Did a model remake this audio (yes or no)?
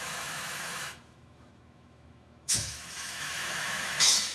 yes